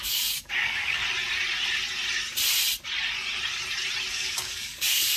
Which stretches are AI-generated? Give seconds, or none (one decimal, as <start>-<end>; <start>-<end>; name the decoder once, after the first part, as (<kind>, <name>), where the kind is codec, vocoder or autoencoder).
0.0-1.0 (codec, DAC); 4.1-5.2